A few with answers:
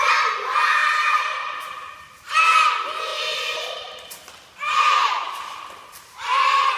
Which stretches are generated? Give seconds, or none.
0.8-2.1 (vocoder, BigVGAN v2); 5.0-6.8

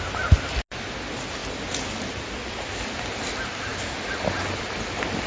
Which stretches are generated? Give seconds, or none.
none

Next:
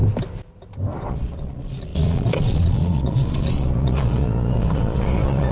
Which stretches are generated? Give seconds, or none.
1.1-5.5 (vocoder, Vocos)